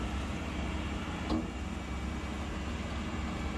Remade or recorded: recorded